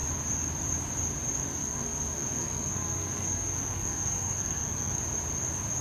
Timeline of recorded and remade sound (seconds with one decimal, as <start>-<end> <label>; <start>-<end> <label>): 0.0-1.6 recorded; 1.6-5.0 remade; 5.0-5.8 recorded